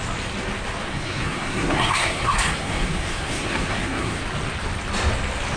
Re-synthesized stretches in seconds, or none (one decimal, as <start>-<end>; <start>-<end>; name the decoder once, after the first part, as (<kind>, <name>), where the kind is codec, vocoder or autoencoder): 0.8-4.2 (codec, SNAC)